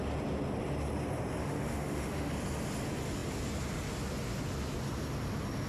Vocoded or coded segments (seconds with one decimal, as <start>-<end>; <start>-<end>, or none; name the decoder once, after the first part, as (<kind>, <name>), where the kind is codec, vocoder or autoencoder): 1.4-2.3 (autoencoder, DAC-VAE)